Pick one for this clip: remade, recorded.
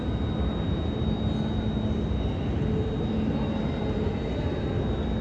recorded